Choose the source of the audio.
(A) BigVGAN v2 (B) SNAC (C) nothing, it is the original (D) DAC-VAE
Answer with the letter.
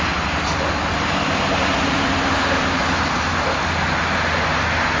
C